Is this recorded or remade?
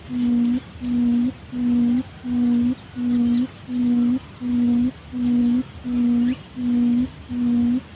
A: recorded